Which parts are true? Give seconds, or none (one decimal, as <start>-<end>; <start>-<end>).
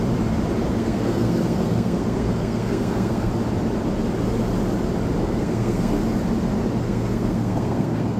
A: 0.0-0.7; 3.3-5.2; 6.0-6.8